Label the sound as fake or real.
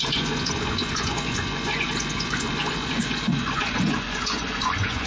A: fake